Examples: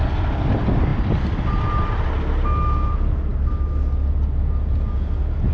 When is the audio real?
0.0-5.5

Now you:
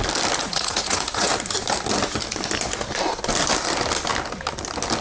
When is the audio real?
0.0-0.4; 1.3-5.0

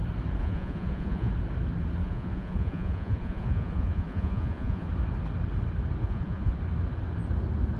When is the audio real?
0.0-0.4; 1.3-2.0; 4.9-6.0; 6.6-7.8

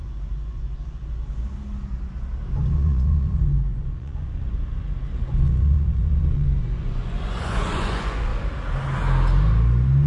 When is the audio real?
1.0-2.6; 8.3-10.1